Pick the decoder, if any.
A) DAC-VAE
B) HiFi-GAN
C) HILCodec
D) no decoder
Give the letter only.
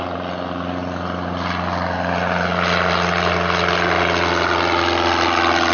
D